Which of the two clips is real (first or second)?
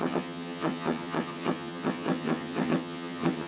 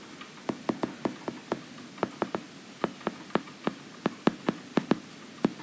second